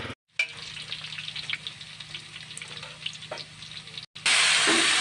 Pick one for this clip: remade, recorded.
recorded